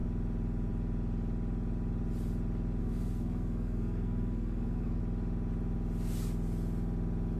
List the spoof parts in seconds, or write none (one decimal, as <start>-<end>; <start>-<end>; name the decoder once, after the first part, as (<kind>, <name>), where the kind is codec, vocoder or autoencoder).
2.8-5.0 (codec, SNAC)